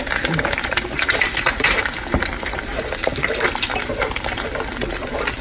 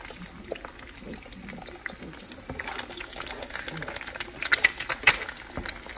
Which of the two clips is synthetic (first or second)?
first